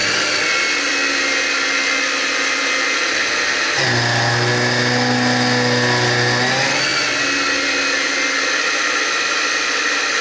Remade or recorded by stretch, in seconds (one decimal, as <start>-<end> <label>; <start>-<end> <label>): 0.0-10.2 recorded

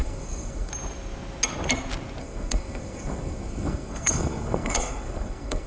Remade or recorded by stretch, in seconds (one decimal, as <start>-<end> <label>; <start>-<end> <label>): 0.0-0.7 remade; 0.7-2.2 recorded; 2.2-5.7 remade

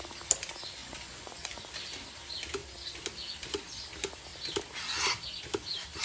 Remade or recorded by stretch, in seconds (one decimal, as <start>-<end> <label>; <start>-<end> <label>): 0.0-0.8 recorded; 0.8-1.7 remade; 1.7-6.0 recorded

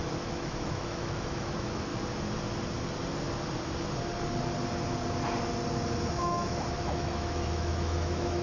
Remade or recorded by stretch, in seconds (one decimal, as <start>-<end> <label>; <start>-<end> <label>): 0.0-1.9 remade; 1.9-6.1 recorded; 6.1-8.4 remade

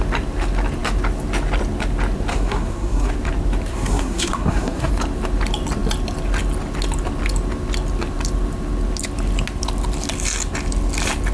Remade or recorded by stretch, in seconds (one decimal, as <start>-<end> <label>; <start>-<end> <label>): 0.0-2.3 recorded; 2.3-3.1 remade; 3.1-3.7 recorded; 3.7-4.9 remade; 4.9-11.3 recorded

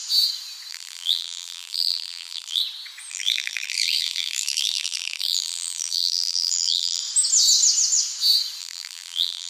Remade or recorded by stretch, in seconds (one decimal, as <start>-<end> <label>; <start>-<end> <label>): 0.0-0.7 recorded; 0.7-2.6 remade; 2.6-3.1 recorded; 3.1-7.0 remade; 7.0-8.6 recorded; 8.6-9.5 remade